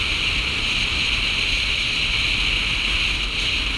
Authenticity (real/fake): real